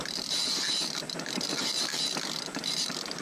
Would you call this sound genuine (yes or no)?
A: no